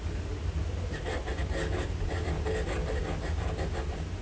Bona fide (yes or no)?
yes